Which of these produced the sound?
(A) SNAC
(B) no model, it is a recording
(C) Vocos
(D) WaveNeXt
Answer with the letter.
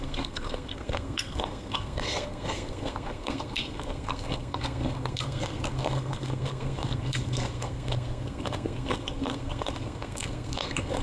A